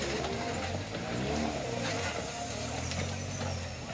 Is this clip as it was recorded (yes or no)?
yes